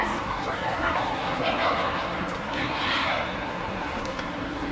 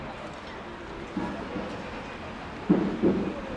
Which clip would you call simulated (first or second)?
first